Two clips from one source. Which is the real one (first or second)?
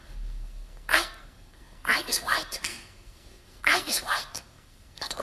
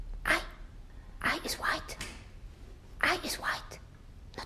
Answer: second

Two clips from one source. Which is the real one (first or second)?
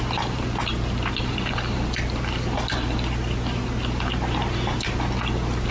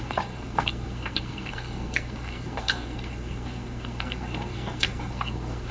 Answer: first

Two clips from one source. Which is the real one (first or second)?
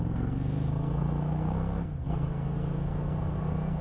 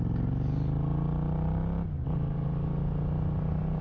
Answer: second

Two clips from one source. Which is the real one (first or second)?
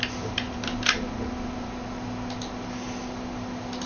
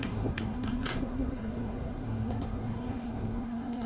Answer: first